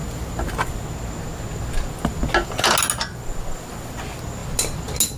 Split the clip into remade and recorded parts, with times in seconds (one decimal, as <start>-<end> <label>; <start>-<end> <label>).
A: 0.0-5.2 recorded